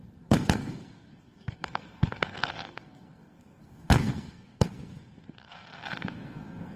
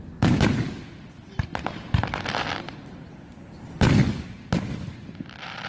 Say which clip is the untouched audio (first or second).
second